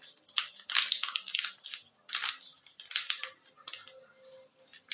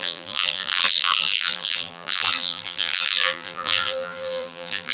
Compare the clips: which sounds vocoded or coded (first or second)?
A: second